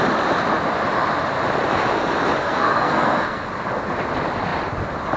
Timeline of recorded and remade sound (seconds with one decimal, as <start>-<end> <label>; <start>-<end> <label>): 0.0-2.4 recorded; 2.4-3.5 remade; 3.5-5.2 recorded